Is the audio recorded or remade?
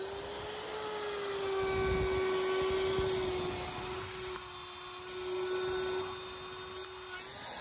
recorded